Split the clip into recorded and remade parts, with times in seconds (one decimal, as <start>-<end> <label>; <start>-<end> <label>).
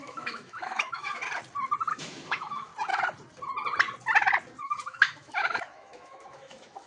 0.0-1.2 remade; 1.2-1.9 recorded; 1.9-2.7 remade; 2.7-4.6 recorded; 4.6-6.9 remade